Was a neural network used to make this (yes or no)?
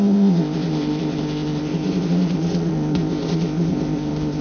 yes